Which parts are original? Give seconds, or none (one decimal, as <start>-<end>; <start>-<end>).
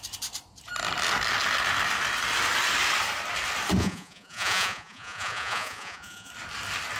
0.0-3.8; 6.3-7.0